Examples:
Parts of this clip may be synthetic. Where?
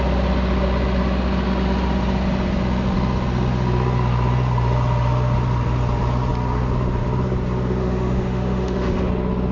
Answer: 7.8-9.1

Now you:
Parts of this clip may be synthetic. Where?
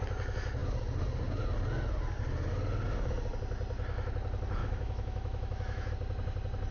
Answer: 4.6-5.9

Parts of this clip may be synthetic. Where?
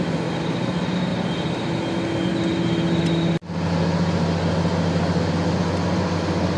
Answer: none